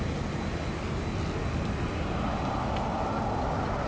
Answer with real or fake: real